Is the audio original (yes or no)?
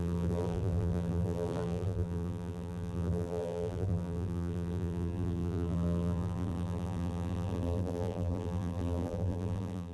no